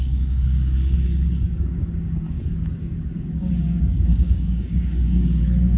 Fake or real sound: fake